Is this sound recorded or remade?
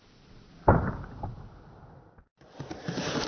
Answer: recorded